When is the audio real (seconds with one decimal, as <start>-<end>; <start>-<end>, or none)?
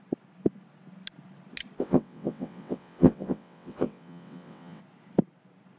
0.0-1.8; 4.8-5.8